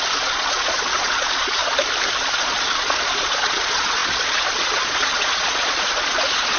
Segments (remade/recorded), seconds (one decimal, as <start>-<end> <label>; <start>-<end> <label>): 0.0-1.6 remade; 1.6-2.3 recorded; 2.3-6.6 remade